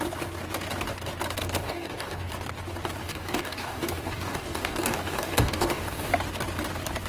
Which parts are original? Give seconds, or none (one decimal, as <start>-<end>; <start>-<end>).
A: 0.0-1.4; 2.3-3.0; 6.1-7.1